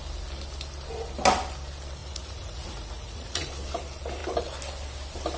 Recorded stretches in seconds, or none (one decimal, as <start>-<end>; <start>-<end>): 0.0-2.0; 3.5-5.4